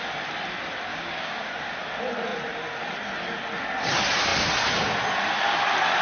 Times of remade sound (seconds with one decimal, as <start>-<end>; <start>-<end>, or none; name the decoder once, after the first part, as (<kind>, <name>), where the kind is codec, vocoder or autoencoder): 0.9-1.5 (codec, DAC)